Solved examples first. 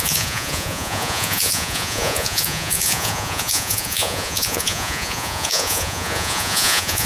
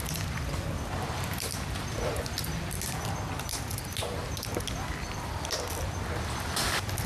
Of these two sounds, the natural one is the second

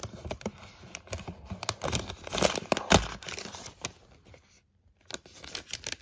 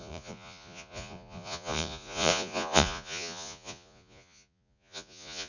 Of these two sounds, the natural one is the first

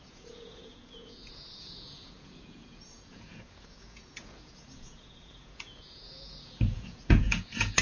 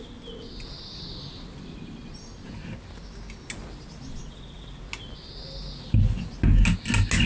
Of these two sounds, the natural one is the second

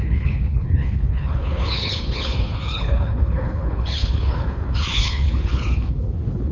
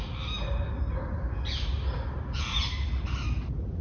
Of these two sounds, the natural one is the second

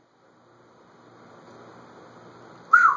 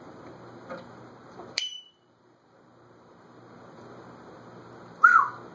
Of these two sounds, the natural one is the first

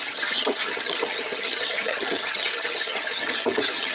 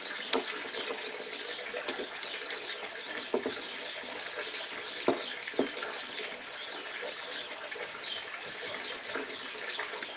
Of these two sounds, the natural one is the second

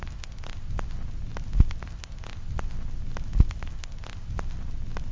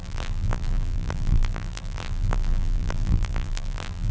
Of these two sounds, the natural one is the first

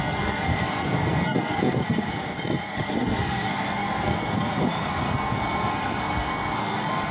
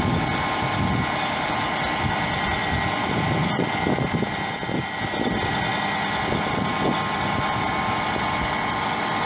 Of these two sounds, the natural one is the second